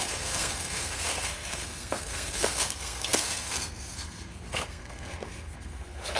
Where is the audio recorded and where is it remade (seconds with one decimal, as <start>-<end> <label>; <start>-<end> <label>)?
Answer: 0.0-6.2 remade